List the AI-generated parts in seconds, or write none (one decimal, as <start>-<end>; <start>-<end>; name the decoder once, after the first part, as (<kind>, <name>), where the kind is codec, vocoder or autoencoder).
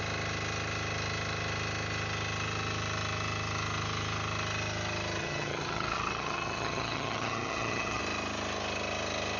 5.2-8.0 (vocoder, HiFi-GAN)